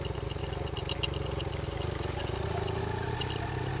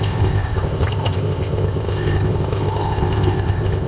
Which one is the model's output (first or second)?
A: second